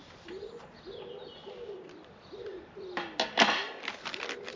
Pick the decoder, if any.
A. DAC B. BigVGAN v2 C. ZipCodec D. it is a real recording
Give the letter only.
D